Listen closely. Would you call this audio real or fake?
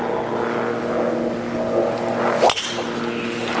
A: real